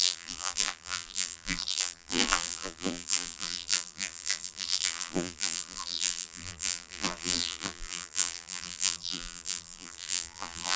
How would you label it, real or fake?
fake